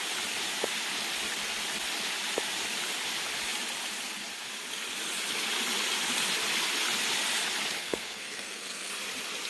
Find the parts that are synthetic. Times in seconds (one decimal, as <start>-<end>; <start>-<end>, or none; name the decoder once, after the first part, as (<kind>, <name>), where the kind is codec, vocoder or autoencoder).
7.8-8.9 (codec, SNAC)